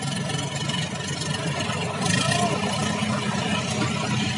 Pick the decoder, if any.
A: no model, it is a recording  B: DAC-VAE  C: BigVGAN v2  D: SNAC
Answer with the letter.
A